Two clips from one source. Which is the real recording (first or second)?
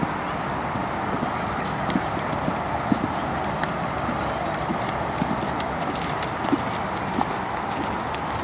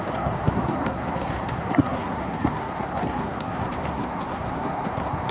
first